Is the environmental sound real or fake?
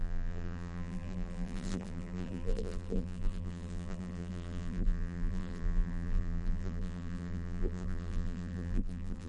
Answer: fake